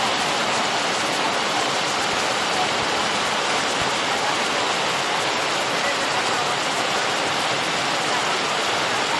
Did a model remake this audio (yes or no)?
no